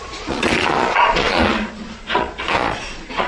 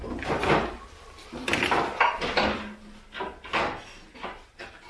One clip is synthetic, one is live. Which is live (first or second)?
second